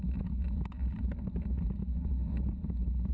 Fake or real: real